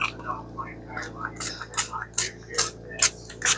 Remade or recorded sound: recorded